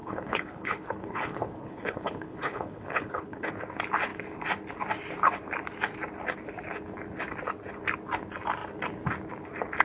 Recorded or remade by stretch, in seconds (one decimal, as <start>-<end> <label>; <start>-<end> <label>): 0.0-3.5 remade; 3.5-9.8 recorded